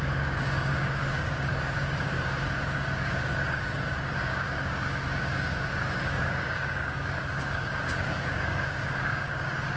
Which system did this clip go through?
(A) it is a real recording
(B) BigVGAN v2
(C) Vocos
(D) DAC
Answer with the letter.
D